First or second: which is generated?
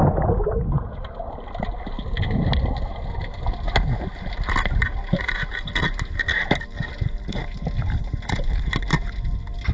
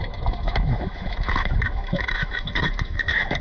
second